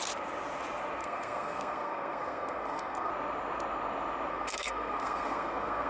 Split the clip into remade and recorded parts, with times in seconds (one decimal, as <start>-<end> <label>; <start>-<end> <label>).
0.0-1.0 recorded; 1.0-3.1 remade; 3.1-4.3 recorded; 4.3-5.9 remade